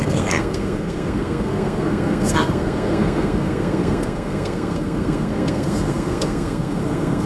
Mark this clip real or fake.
fake